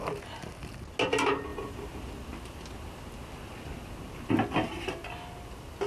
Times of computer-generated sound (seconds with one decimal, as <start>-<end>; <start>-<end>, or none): none